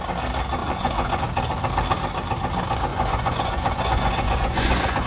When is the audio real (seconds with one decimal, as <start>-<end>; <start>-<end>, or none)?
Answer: 0.0-0.6; 1.2-2.9